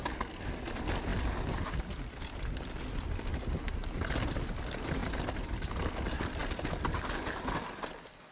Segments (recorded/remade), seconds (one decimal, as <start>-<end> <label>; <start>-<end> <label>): 0.0-8.3 recorded